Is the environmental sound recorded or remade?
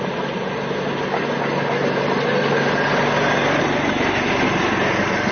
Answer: recorded